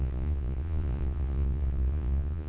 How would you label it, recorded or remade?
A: remade